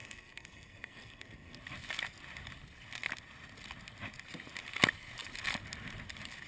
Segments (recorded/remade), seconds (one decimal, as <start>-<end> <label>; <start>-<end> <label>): 0.0-1.6 remade; 1.6-6.5 recorded